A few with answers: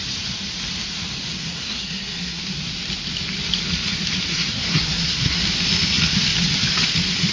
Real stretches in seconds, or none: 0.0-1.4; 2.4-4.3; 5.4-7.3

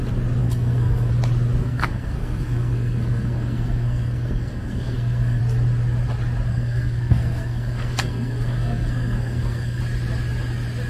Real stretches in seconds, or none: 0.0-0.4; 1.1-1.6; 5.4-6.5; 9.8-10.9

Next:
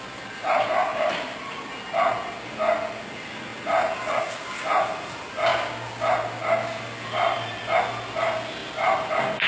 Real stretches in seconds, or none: 0.0-9.5